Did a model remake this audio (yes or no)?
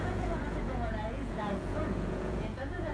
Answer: yes